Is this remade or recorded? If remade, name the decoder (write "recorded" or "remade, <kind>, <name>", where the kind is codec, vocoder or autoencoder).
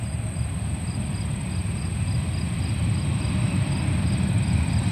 recorded